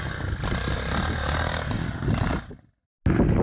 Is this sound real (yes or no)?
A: yes